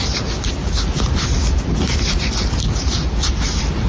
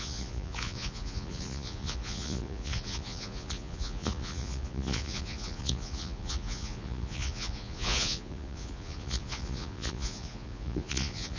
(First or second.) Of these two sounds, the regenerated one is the second